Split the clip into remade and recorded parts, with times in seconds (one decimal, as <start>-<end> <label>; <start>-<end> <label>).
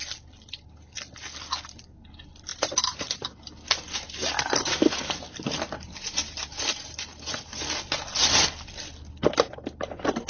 0.0-2.5 recorded; 2.5-7.7 remade; 7.7-10.3 recorded